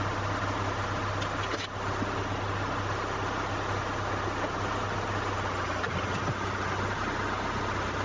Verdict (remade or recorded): recorded